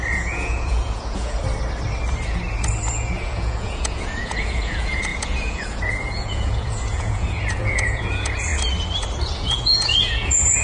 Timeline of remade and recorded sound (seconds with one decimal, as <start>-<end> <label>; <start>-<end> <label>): 0.0-1.4 remade; 1.4-2.9 recorded; 2.9-8.5 remade; 8.5-9.3 recorded; 9.3-10.6 remade